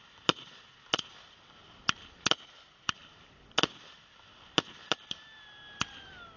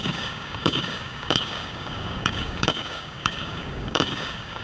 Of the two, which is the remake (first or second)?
second